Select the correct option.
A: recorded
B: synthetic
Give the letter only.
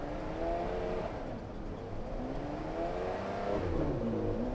A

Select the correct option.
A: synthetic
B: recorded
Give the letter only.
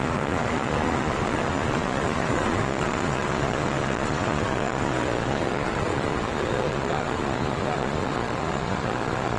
A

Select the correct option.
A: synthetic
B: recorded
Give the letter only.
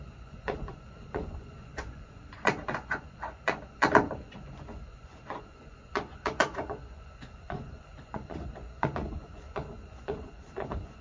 A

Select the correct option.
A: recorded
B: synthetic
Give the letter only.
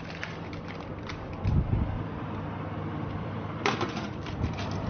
B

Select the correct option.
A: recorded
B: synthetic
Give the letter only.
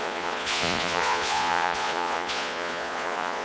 B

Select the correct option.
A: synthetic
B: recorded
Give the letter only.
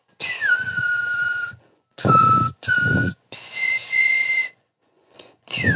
A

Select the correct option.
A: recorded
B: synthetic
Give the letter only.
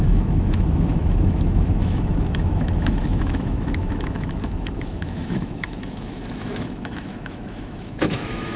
B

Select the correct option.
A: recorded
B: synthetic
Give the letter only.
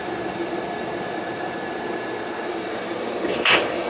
B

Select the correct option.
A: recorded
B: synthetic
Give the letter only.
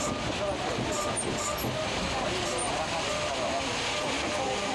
A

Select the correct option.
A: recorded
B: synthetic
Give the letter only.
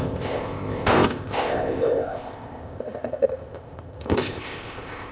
B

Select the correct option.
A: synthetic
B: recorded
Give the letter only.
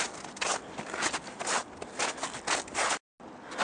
B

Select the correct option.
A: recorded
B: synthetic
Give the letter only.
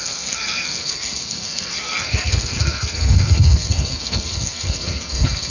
B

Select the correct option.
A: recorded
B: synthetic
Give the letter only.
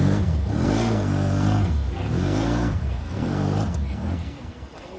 B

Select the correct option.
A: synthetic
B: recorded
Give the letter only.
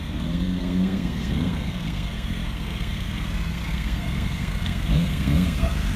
A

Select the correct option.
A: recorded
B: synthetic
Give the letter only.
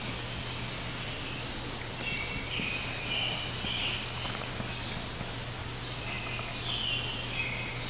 A